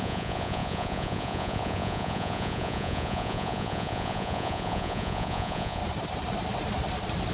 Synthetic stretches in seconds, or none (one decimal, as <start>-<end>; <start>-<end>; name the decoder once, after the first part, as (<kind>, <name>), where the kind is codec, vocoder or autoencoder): 0.0-5.8 (vocoder, Vocos)